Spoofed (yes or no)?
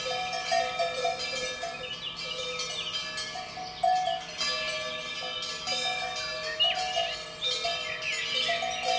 no